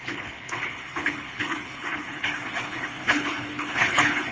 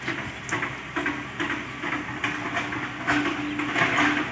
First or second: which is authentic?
second